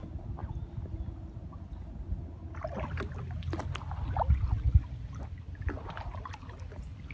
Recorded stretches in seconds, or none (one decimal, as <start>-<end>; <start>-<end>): 0.0-7.1